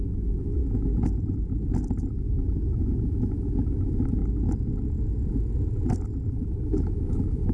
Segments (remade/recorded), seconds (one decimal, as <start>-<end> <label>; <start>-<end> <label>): 0.0-0.6 remade; 0.6-2.1 recorded; 2.1-4.2 remade; 4.2-6.3 recorded; 6.3-7.5 remade